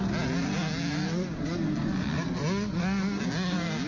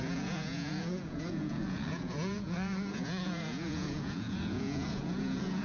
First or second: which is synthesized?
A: second